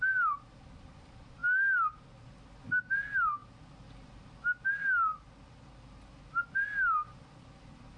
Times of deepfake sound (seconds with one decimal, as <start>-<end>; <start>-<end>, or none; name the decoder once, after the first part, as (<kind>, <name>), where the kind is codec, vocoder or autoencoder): none